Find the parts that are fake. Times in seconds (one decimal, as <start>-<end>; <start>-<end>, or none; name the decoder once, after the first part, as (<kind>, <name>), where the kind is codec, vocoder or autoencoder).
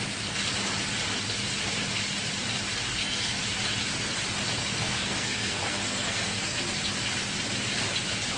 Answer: 2.9-3.4 (codec, SNAC); 4.6-6.6